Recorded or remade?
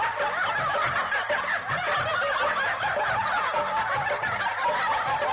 recorded